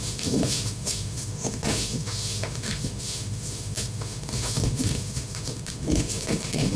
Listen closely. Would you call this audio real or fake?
fake